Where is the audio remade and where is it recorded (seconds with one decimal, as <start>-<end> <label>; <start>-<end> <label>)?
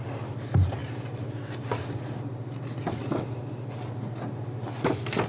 0.0-5.3 recorded